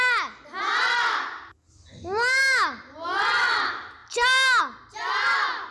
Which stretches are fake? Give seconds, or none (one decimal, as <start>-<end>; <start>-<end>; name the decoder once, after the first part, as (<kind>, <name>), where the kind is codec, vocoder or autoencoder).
none